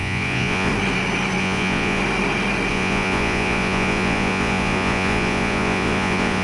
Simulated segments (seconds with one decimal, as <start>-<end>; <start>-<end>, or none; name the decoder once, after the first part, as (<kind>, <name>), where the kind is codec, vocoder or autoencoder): 0.0-0.7 (vocoder, Vocos); 1.4-2.0; 2.7-6.4